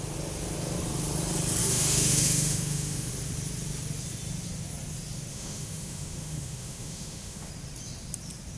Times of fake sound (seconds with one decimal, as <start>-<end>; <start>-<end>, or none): 1.6-3.1; 5.3-7.5

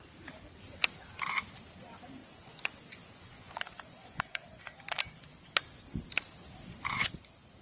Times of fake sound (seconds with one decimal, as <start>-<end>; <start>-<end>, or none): 2.2-4.6

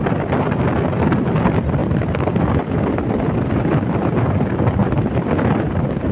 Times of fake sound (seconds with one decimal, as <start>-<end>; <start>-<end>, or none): 1.8-2.8

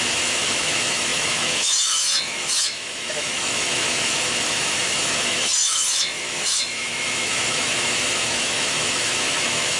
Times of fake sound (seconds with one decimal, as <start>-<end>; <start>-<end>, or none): 0.0-9.8

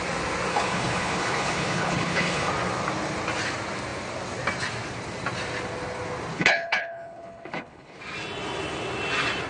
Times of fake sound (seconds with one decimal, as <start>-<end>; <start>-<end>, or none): 0.5-2.5; 6.3-8.0